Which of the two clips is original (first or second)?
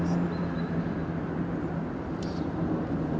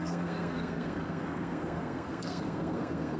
first